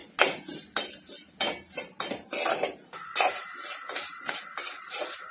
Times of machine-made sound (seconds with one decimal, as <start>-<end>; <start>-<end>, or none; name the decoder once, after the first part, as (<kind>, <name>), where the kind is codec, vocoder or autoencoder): none